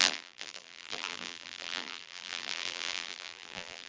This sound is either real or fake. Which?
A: fake